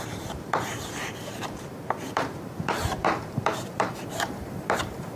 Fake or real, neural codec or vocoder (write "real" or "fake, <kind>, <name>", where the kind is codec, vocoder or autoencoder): fake, vocoder, BigVGAN v2